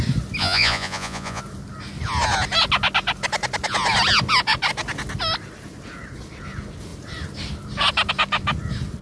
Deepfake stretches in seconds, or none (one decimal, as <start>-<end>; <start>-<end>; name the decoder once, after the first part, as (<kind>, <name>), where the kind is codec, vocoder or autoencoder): 0.4-1.4 (vocoder, Vocos)